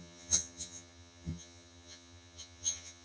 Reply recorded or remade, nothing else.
remade